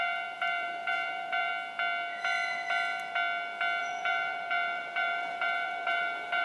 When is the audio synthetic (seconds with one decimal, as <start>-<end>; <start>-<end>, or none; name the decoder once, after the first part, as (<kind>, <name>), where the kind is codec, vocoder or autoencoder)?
0.0-1.5 (vocoder, BigVGAN v2); 3.8-6.4